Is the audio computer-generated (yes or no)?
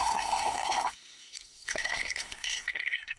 yes